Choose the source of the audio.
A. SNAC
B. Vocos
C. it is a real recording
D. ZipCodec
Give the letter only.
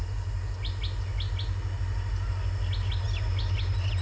C